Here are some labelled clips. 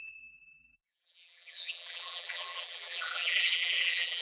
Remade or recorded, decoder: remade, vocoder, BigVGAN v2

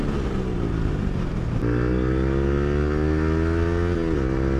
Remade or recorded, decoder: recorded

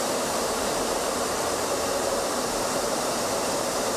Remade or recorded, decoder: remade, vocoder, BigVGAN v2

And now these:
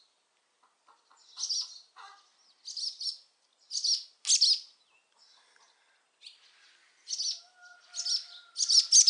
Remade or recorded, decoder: recorded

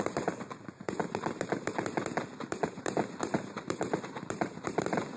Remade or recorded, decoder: remade, vocoder, BigVGAN v2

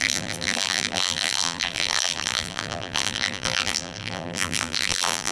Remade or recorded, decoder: remade, vocoder, BigVGAN v2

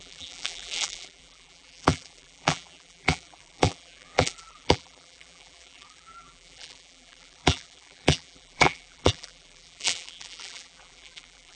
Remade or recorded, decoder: remade, vocoder, BigVGAN v2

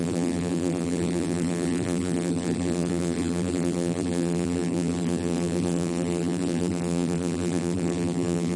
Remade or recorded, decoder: remade, vocoder, BigVGAN v2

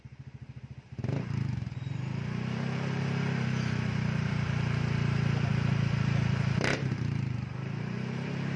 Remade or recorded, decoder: remade, vocoder, BigVGAN v2